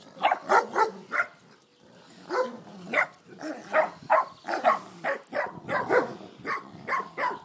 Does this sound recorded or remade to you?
recorded